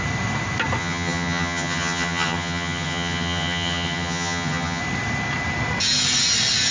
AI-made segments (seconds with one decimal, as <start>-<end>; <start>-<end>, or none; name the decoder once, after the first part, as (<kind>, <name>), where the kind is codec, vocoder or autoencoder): 0.8-4.8 (vocoder, HiFi-GAN)